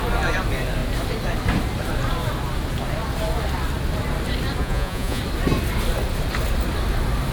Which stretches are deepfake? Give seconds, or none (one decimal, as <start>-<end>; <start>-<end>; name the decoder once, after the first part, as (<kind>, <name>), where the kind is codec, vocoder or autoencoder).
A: 4.6-5.2 (vocoder, Vocos)